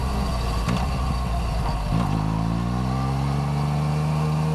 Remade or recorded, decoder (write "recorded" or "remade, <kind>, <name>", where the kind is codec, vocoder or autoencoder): recorded